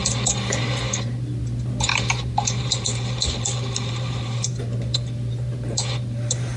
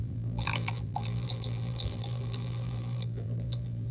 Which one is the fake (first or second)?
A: second